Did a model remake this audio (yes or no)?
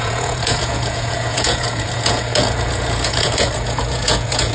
yes